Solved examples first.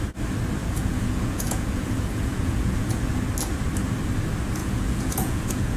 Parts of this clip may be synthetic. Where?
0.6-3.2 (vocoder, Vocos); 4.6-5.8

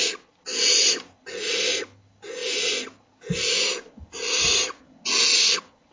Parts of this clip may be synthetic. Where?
none